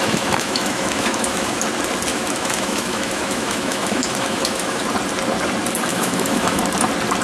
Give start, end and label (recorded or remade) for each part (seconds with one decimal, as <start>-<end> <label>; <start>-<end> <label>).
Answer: 0.0-1.6 remade; 1.6-2.1 recorded; 2.1-4.8 remade; 4.8-5.9 recorded; 5.9-6.6 remade; 6.6-7.2 recorded